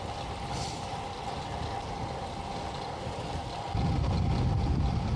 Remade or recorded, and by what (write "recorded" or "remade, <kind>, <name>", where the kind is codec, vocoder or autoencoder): recorded